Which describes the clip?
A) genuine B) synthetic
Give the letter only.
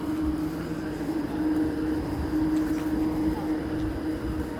A